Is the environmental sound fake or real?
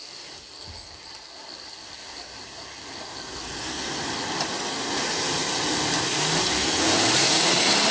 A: real